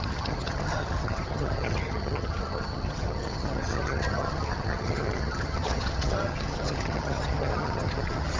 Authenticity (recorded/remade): remade